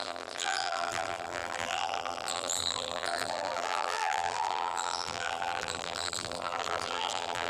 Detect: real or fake fake